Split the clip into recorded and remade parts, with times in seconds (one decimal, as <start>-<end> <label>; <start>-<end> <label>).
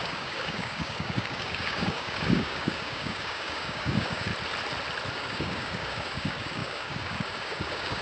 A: 0.0-4.3 remade; 4.3-5.1 recorded; 5.1-8.0 remade